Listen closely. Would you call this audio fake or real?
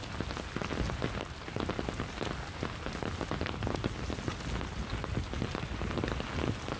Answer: real